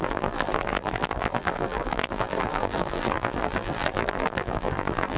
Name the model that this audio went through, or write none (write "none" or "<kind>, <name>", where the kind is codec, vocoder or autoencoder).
vocoder, BigVGAN v2